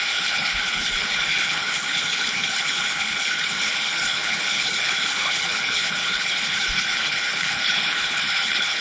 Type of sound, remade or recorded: remade